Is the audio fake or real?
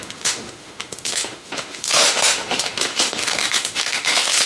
fake